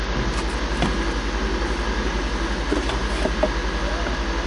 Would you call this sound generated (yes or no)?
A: no